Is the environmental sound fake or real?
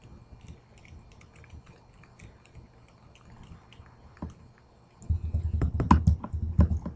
real